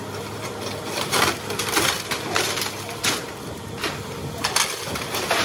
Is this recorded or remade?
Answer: recorded